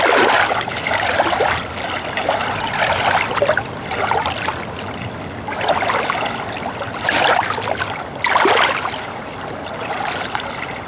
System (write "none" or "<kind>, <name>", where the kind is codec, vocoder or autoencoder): none